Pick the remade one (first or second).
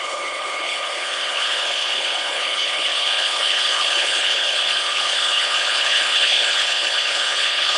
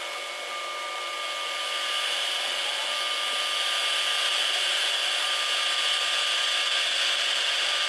first